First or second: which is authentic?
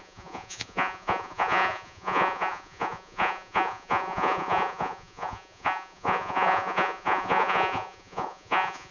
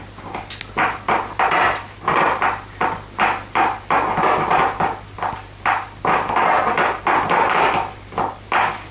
second